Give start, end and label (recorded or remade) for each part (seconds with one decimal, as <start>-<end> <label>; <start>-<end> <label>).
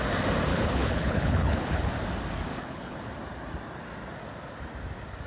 0.0-0.5 recorded; 0.5-1.9 remade; 1.9-2.5 recorded; 2.5-3.1 remade; 3.1-5.3 recorded